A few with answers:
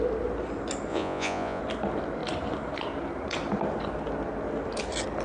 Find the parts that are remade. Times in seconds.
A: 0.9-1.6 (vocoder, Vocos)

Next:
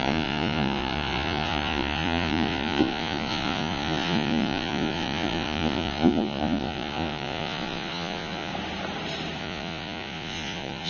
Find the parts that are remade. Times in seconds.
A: 0.0-8.5 (vocoder, Vocos); 9.4-10.9

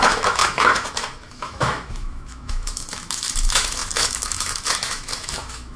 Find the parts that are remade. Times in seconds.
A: 0.0-5.8 (autoencoder, DAC-VAE)

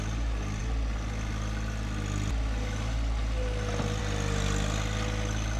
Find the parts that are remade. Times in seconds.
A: none

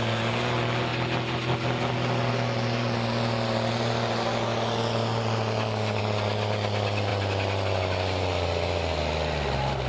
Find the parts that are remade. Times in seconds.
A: none

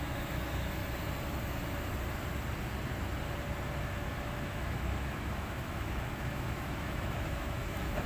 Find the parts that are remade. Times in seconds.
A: 0.0-0.8 (autoencoder, DAC-VAE); 4.0-8.1

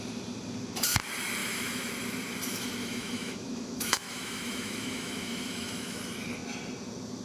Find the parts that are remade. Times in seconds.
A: 1.4-1.9 (autoencoder, DAC-VAE); 2.8-6.0